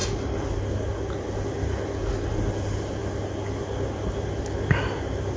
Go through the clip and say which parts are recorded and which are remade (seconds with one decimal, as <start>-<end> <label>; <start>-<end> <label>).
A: 0.0-5.4 recorded